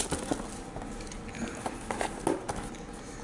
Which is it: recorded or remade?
recorded